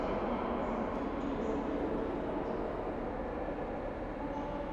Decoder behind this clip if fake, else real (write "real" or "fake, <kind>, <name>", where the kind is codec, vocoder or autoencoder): real